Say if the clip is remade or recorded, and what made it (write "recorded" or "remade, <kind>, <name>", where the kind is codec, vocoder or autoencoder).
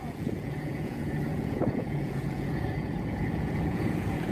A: remade, vocoder, Vocos